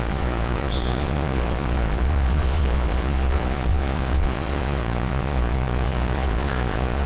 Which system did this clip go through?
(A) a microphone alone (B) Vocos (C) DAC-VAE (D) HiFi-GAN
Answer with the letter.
B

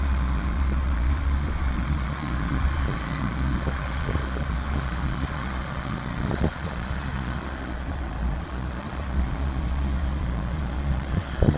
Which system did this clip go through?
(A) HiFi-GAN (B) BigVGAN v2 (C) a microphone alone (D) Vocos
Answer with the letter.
D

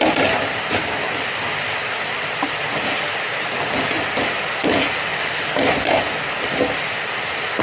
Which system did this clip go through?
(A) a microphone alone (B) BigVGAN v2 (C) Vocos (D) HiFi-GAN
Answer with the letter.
A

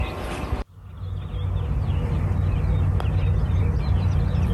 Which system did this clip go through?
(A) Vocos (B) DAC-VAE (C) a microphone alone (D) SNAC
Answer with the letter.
C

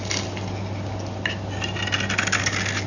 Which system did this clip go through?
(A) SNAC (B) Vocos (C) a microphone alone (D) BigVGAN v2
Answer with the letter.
C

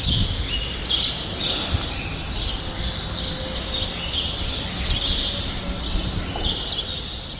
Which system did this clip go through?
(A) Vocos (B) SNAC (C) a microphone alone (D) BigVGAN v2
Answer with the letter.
C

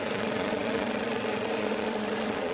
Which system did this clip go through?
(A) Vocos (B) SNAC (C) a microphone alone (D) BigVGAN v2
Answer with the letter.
A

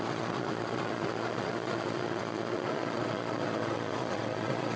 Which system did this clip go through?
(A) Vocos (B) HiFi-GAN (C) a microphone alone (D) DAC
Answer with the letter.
A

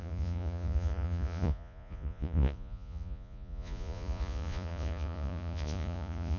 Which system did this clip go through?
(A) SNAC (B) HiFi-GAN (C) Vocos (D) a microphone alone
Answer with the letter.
C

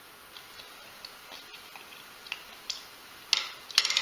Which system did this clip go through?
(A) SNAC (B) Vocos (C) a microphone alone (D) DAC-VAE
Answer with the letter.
C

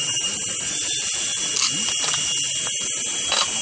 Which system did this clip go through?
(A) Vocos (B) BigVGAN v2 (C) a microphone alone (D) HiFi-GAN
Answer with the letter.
C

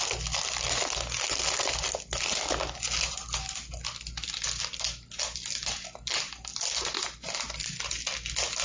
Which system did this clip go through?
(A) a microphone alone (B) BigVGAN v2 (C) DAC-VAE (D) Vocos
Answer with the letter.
A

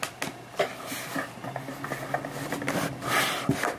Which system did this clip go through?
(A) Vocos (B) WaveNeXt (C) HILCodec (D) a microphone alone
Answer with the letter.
D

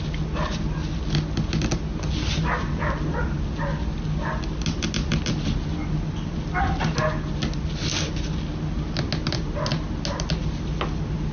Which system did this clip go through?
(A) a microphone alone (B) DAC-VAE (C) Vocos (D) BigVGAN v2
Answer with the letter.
A